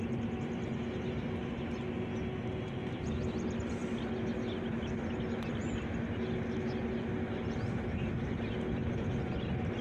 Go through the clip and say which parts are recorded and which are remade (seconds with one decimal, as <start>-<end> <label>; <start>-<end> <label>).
0.0-9.8 recorded